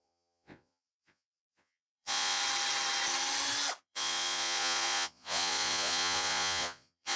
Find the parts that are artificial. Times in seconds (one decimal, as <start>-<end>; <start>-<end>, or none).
0.0-2.4; 3.8-7.2